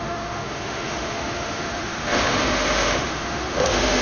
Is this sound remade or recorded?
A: remade